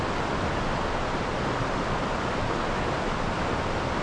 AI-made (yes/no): no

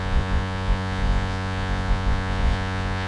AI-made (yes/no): yes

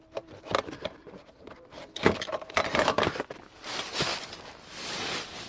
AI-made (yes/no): no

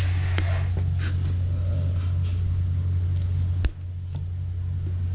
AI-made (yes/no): no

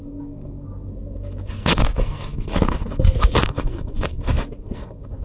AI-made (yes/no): yes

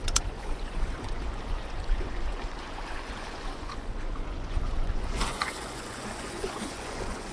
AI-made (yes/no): yes